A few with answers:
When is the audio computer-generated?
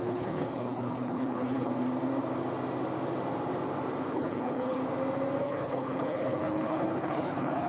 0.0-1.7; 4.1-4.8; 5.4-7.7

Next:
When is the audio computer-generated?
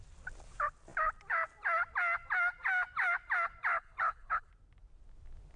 3.7-4.5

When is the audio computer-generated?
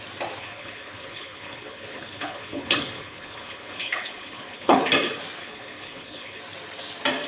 0.4-4.8; 5.4-6.4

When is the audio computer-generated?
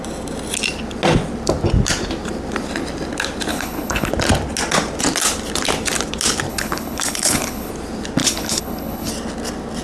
3.5-4.1; 6.5-7.7; 8.2-9.1